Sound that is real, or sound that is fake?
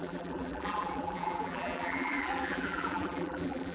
fake